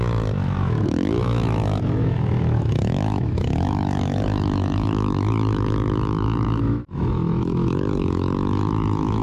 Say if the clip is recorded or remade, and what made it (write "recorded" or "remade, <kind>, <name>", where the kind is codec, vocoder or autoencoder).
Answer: remade, autoencoder, DAC-VAE